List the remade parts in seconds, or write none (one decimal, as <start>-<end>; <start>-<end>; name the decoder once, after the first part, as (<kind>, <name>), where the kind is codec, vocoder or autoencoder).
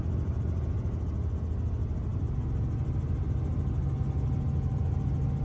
none